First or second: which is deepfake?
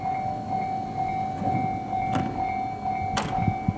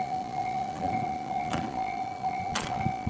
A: second